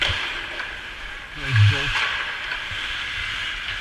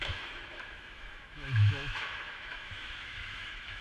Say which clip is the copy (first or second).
second